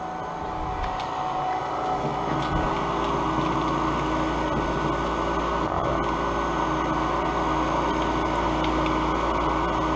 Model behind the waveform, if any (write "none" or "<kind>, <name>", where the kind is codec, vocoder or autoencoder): none